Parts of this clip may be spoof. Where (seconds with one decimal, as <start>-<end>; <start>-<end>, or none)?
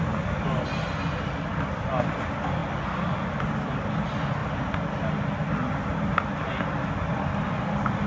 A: none